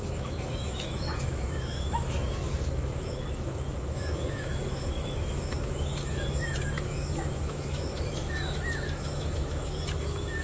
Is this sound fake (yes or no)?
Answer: yes